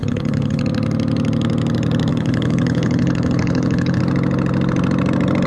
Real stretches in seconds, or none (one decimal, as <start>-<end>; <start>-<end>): 0.6-2.1; 4.0-5.5